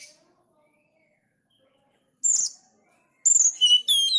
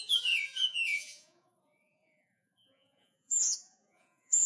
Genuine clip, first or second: first